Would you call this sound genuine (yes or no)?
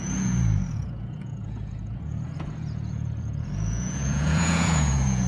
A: no